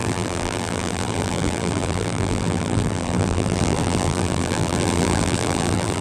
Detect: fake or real fake